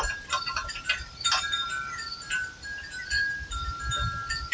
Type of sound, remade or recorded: recorded